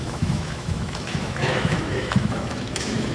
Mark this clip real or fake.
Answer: fake